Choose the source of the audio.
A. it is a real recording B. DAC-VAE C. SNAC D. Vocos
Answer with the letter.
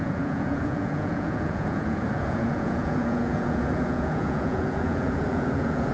D